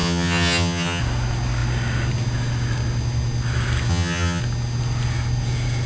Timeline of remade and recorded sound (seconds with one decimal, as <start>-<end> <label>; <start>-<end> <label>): 0.0-1.0 remade; 1.0-3.9 recorded; 3.9-4.4 remade; 4.4-5.9 recorded

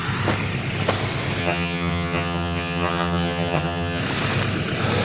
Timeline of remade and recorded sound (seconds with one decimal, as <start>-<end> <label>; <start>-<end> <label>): 0.0-1.4 recorded; 1.4-4.0 remade; 4.0-5.0 recorded

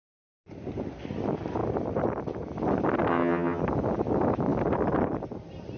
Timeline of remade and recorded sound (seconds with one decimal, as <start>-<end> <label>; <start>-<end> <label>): 0.0-3.1 recorded; 3.1-3.6 remade; 3.6-5.8 recorded

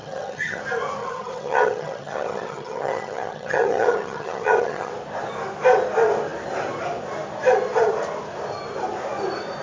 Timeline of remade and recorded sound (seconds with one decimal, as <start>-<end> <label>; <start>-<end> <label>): 0.0-0.6 remade; 0.6-1.0 recorded; 1.0-4.9 remade; 4.9-9.6 recorded

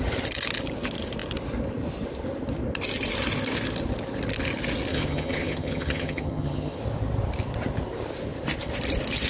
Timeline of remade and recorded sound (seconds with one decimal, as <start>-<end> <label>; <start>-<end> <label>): 0.0-4.9 recorded; 4.9-6.8 remade; 6.8-9.3 recorded

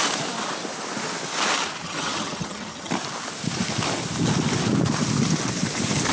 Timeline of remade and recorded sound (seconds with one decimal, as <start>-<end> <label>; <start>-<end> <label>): 0.0-1.8 recorded; 1.8-2.9 remade; 2.9-6.1 recorded

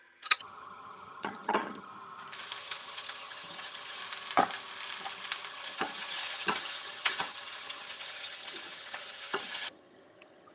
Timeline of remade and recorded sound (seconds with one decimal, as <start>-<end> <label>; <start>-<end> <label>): 0.0-1.9 remade; 1.9-2.6 recorded; 2.6-4.0 remade; 4.0-5.5 recorded; 5.5-10.5 remade